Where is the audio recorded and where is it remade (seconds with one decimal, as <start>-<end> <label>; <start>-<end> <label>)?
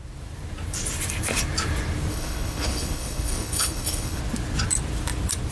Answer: 0.0-2.1 recorded; 2.1-4.2 remade; 4.2-5.5 recorded